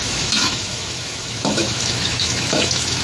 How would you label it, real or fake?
fake